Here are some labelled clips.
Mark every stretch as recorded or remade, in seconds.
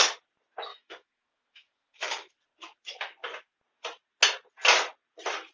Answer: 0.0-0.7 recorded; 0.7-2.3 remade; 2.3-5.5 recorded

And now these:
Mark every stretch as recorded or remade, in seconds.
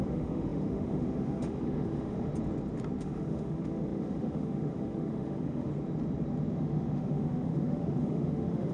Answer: 0.0-2.3 remade; 2.3-3.0 recorded; 3.0-5.7 remade; 5.7-6.5 recorded; 6.5-8.7 remade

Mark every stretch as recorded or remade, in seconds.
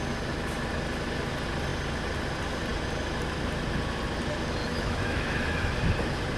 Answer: 0.0-4.6 recorded; 4.6-5.7 remade; 5.7-6.4 recorded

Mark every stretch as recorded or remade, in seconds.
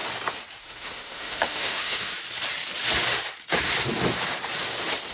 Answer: 0.0-0.6 recorded; 0.6-2.1 remade; 2.1-5.1 recorded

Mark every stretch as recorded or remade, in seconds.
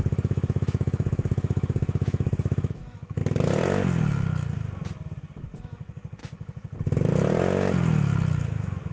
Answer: 0.0-3.2 remade; 3.2-5.6 recorded; 5.6-6.2 remade; 6.2-8.4 recorded; 8.4-8.9 remade